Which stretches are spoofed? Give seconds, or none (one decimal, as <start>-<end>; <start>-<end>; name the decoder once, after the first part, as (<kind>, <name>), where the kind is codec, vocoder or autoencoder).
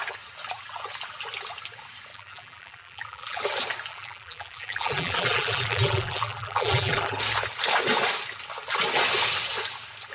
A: 2.1-3.4 (vocoder, BigVGAN v2); 3.9-7.2